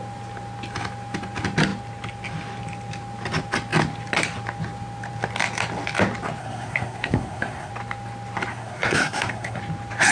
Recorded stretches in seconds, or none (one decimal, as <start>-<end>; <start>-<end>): 0.0-6.4; 7.7-8.5; 9.6-10.1